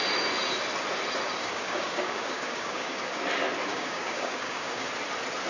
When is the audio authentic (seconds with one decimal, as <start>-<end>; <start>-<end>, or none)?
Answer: 0.0-1.4; 3.2-3.7; 4.9-5.5